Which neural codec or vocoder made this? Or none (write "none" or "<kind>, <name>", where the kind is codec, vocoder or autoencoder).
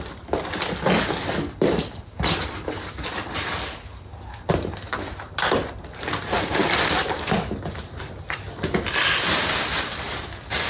none